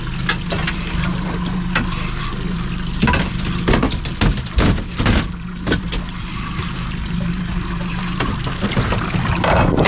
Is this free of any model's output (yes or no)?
yes